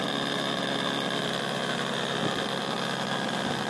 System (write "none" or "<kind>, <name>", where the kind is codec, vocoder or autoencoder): none